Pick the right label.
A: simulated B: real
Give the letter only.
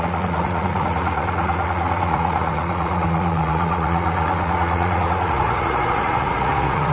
A